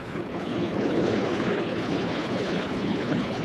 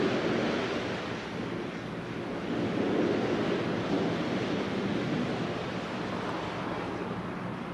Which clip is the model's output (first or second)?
first